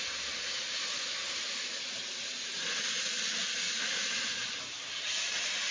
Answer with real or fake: fake